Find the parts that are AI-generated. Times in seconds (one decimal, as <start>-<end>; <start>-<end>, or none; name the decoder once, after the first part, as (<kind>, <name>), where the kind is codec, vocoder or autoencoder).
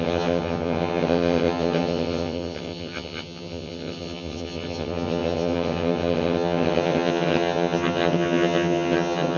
0.0-9.4 (vocoder, HiFi-GAN)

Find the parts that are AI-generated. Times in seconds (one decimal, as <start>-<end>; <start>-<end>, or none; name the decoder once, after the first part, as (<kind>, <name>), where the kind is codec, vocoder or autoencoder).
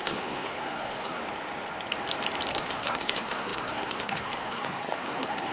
0.0-1.2 (codec, SNAC); 2.5-5.5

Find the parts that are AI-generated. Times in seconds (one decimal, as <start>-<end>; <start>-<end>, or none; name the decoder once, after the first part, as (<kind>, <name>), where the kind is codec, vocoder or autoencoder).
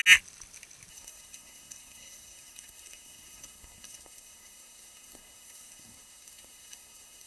0.9-7.3 (codec, SNAC)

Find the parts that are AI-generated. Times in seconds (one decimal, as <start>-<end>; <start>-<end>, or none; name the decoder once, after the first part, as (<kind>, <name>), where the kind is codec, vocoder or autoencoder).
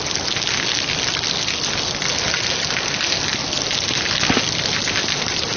none